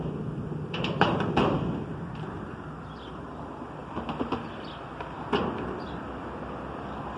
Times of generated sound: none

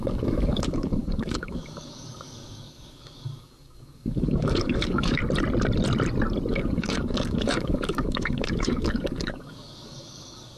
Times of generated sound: 0.0-5.2; 6.5-10.6

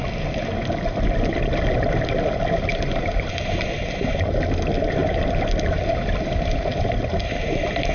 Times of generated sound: 2.7-3.3; 5.0-7.9